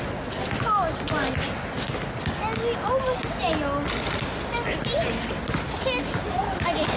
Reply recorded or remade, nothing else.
recorded